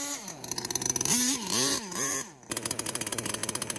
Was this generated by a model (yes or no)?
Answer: yes